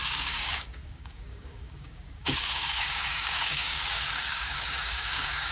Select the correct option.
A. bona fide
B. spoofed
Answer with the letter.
B